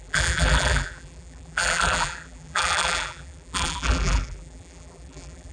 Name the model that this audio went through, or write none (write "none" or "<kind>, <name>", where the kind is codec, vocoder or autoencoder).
vocoder, BigVGAN v2